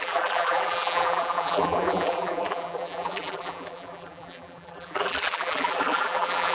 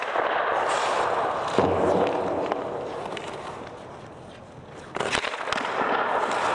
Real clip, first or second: second